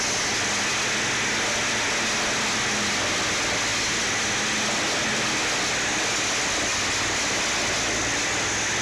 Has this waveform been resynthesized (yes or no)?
no